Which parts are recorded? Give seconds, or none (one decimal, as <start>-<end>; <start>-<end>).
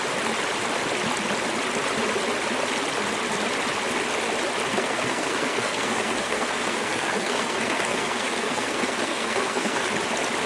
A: 0.0-4.7; 9.9-10.5